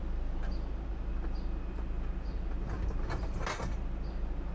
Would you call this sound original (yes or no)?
yes